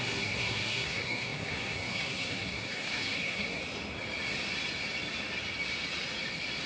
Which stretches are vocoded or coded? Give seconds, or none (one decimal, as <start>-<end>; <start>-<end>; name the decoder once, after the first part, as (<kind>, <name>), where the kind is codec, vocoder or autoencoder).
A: 0.0-3.6 (codec, SNAC)